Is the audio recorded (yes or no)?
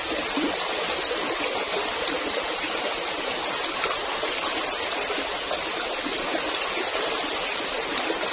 yes